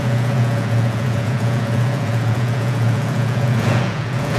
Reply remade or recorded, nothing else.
remade